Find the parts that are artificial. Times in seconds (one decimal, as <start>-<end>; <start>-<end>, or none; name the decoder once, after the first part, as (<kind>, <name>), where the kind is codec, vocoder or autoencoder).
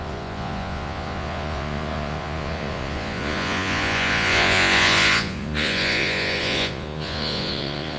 0.0-8.0 (vocoder, Vocos)